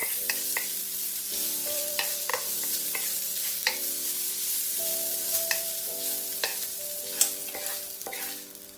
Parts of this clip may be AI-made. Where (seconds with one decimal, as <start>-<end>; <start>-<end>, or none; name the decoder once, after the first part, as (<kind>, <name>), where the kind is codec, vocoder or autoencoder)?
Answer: 0.8-6.5 (vocoder, BigVGAN v2)